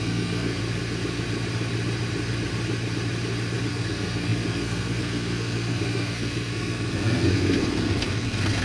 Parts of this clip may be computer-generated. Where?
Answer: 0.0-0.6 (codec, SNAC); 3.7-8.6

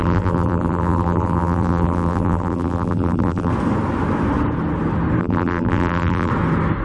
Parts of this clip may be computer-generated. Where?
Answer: 0.0-3.5 (vocoder, BigVGAN v2); 5.2-6.3

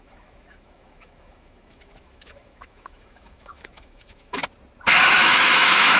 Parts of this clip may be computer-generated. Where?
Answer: 0.0-4.4 (autoencoder, DAC-VAE); 5.0-6.0

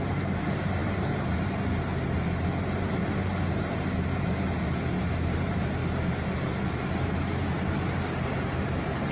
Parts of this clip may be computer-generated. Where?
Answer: 0.0-1.9 (vocoder, BigVGAN v2); 3.5-5.8; 6.7-9.1

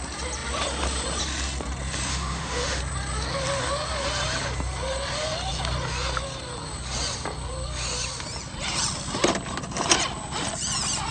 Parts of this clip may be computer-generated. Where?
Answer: 2.1-2.8 (autoencoder, DAC-VAE)

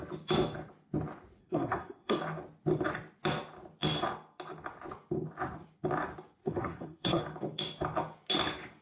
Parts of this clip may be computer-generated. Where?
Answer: 1.4-2.2 (codec, SNAC); 6.4-7.2